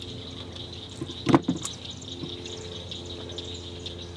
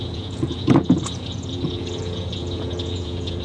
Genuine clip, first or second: first